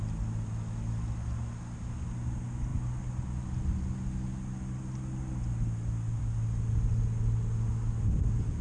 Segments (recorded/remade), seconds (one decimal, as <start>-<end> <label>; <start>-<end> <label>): 0.0-8.6 recorded